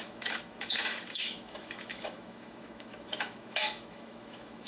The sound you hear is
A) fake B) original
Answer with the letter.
A